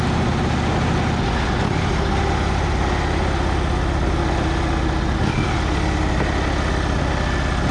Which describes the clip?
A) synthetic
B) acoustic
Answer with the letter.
B